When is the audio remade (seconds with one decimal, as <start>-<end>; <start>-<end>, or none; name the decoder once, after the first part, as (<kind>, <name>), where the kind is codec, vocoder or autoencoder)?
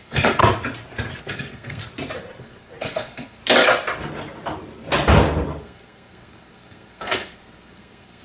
0.0-0.4 (codec, SNAC); 1.2-1.8; 2.4-3.4; 5.6-8.2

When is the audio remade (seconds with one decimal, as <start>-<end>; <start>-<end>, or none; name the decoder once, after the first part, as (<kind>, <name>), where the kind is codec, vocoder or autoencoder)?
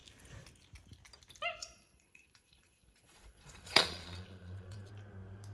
1.6-4.9 (vocoder, Vocos)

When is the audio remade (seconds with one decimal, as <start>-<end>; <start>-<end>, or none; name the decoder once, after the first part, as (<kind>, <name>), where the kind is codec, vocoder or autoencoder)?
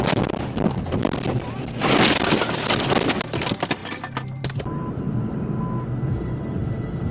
none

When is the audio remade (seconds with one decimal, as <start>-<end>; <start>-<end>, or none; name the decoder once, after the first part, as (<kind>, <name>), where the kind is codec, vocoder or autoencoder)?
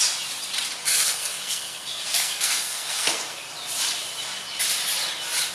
0.8-3.4 (codec, SNAC)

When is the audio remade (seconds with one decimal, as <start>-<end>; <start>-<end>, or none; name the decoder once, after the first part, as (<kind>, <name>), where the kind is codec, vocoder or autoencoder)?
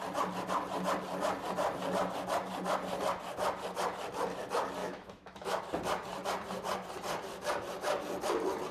4.8-5.6 (autoencoder, DAC-VAE)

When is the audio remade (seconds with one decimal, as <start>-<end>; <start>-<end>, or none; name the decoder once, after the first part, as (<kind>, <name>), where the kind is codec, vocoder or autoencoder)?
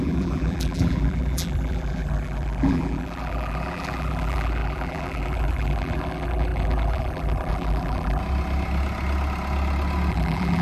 0.0-8.2 (vocoder, BigVGAN v2); 10.1-10.6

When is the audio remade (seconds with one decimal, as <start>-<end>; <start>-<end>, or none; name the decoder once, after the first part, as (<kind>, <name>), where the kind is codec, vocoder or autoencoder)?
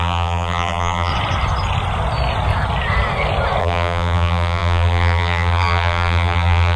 0.0-1.1 (vocoder, BigVGAN v2); 3.6-6.8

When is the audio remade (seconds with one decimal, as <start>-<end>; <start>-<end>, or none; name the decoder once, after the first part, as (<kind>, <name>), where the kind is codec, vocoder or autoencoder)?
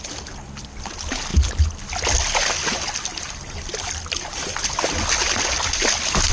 none